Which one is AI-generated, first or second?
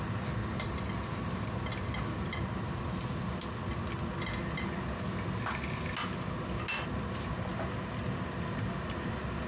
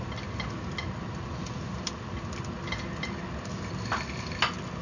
second